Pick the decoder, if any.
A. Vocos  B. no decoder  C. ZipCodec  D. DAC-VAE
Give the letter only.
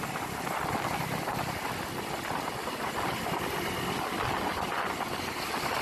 B